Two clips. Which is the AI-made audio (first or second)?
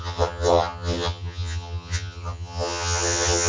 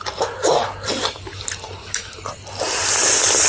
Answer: first